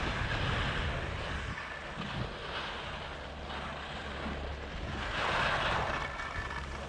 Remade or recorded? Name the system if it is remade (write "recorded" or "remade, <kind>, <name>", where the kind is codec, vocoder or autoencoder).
recorded